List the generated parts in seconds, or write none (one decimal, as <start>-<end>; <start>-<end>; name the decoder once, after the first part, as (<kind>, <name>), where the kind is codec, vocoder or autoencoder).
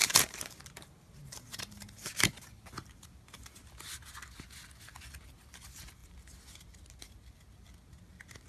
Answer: 0.0-2.2 (vocoder, BigVGAN v2)